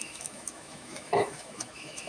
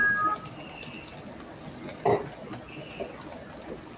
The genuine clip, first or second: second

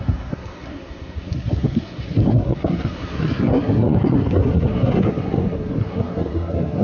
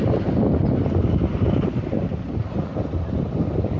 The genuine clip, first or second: second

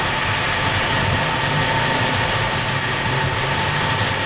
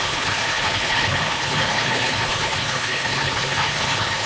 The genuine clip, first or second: first